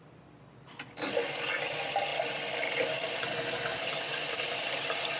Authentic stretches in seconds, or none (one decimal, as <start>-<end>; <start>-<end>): 0.0-5.2